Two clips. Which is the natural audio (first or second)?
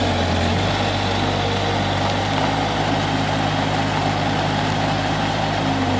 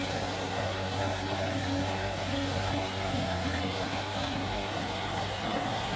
first